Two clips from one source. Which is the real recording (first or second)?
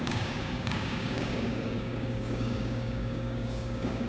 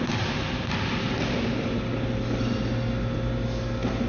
second